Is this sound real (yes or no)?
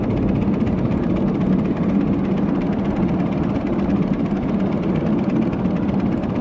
yes